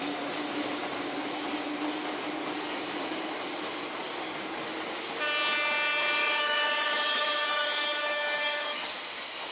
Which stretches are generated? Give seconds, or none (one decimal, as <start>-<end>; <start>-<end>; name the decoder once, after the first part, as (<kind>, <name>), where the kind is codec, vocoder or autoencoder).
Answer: 6.2-8.8 (autoencoder, DAC-VAE)